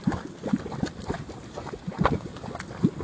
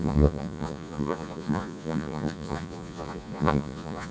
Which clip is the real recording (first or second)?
first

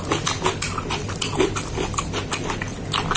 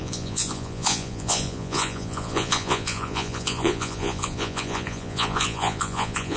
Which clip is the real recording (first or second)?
first